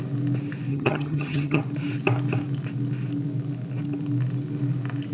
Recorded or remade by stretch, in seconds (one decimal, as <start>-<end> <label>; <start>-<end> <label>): 0.0-0.7 recorded; 0.7-1.6 remade; 1.6-5.1 recorded